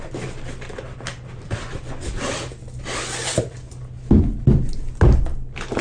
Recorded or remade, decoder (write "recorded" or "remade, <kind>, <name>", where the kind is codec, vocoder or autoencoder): recorded